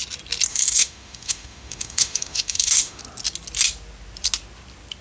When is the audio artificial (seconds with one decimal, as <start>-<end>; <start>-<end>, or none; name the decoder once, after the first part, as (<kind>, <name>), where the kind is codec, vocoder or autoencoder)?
0.5-3.0 (autoencoder, DAC-VAE)